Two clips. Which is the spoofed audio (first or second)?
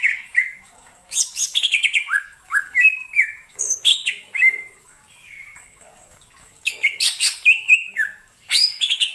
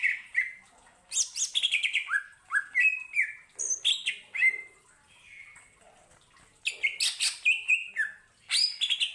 first